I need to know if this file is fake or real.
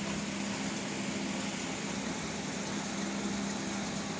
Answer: real